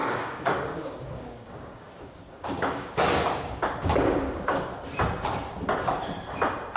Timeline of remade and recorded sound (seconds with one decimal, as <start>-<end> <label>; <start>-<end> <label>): 0.0-4.7 remade; 4.7-6.8 recorded